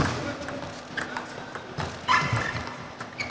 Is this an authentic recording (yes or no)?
yes